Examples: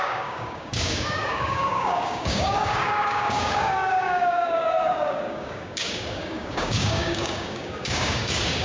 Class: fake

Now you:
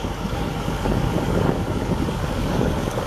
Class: fake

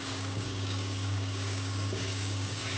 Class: fake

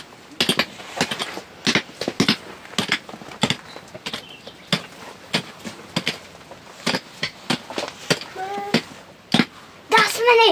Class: real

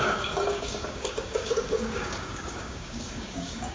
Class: fake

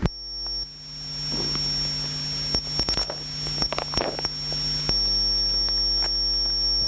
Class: real